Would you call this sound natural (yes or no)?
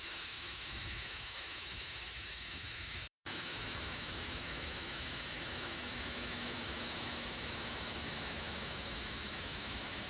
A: no